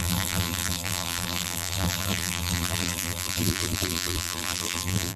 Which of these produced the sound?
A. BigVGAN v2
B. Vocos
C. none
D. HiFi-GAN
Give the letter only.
A